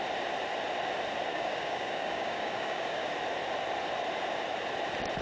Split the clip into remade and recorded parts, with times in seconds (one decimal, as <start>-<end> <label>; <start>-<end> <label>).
0.0-1.3 recorded; 1.3-3.1 remade; 3.1-5.2 recorded